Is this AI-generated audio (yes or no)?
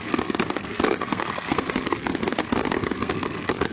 yes